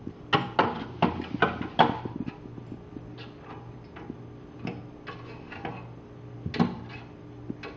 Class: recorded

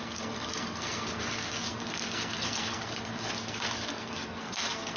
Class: remade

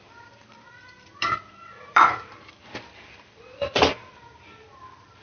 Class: remade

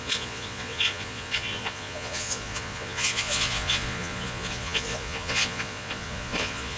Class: remade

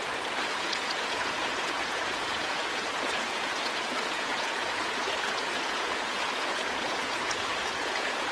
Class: remade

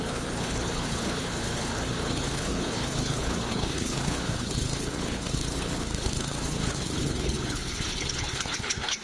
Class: remade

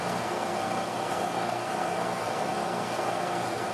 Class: remade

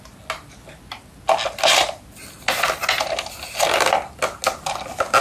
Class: recorded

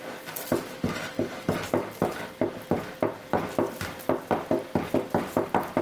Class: recorded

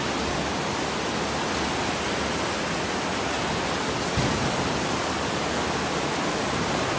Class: recorded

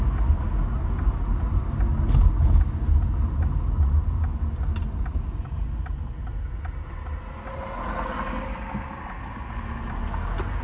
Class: recorded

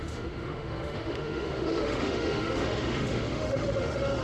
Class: remade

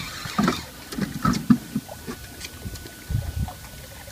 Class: recorded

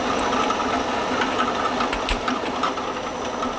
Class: recorded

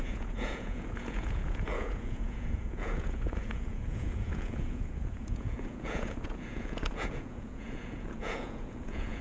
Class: remade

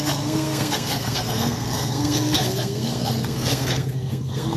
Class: remade